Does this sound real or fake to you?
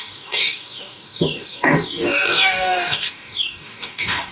fake